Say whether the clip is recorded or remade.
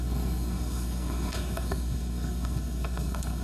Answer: remade